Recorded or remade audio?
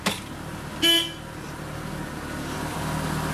recorded